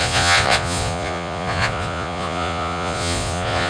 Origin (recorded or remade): remade